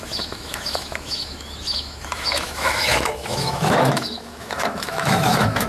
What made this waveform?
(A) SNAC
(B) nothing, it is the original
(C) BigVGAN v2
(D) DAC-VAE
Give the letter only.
D